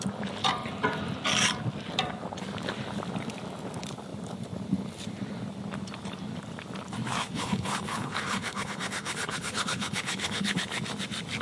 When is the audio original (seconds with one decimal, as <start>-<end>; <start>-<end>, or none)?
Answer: 0.0-7.2; 10.6-11.4